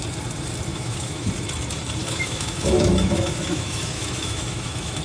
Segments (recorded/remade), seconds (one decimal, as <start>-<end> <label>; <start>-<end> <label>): 0.0-0.7 recorded; 0.7-1.3 remade; 1.3-2.0 recorded; 2.0-5.0 remade